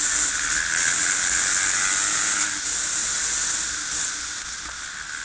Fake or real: real